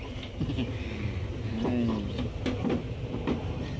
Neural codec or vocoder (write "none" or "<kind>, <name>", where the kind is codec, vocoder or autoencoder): none